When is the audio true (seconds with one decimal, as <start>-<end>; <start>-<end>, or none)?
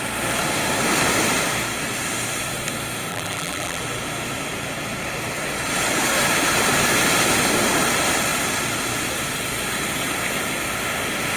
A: 0.0-3.1; 3.8-11.4